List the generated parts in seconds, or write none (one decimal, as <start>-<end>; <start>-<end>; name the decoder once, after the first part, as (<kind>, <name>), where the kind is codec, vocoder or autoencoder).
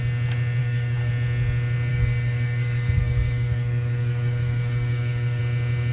0.6-1.1 (codec, DAC); 1.9-5.4